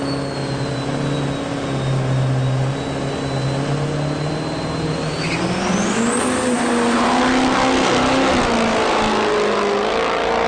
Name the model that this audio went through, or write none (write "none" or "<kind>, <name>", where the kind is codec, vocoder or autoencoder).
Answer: none